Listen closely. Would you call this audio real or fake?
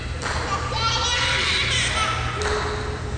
real